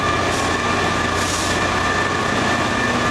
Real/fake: real